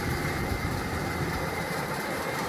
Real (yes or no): no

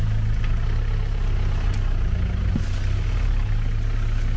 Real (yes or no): yes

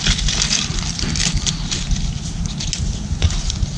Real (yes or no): yes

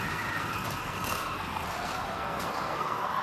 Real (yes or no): no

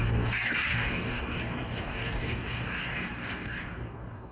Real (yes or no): no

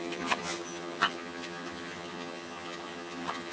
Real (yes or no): no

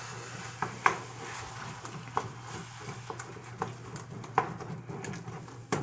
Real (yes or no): yes